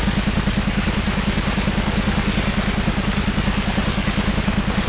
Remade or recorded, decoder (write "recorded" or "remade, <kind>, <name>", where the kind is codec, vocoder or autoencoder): remade, codec, DAC